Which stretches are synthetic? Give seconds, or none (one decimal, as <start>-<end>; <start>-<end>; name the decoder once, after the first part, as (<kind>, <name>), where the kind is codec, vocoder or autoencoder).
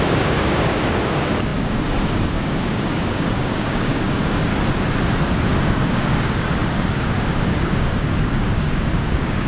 0.0-4.5 (codec, DAC); 5.7-9.5